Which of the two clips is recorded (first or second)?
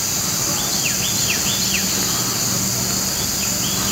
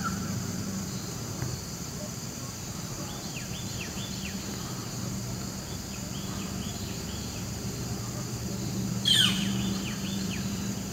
first